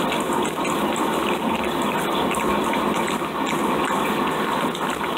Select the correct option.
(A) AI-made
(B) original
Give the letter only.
B